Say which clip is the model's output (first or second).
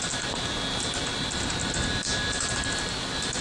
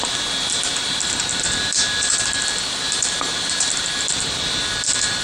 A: second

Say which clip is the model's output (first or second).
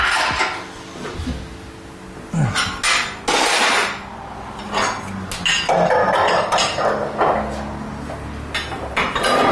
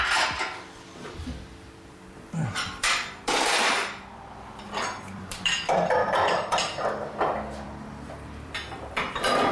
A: second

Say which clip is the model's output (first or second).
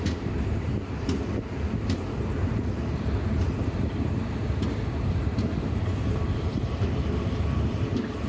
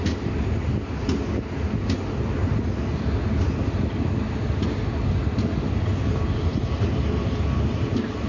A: first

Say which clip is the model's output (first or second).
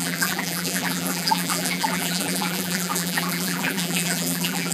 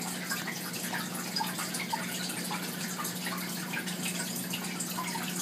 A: first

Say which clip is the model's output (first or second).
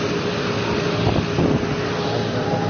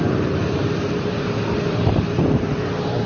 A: second